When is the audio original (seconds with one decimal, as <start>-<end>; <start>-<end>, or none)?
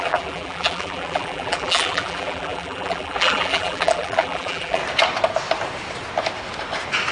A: 4.8-7.1